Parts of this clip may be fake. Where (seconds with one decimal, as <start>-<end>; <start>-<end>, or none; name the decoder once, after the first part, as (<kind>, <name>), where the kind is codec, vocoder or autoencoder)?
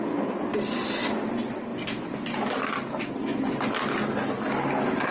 none